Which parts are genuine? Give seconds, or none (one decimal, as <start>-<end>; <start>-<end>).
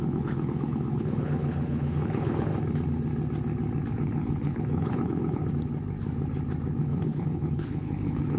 2.5-3.9; 5.4-6.8